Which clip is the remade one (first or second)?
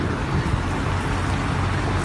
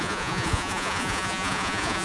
second